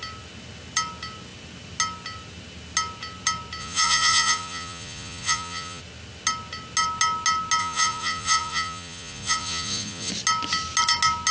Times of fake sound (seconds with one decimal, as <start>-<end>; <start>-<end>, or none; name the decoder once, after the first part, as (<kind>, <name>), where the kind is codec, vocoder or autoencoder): 3.6-5.8 (vocoder, Vocos); 7.6-10.1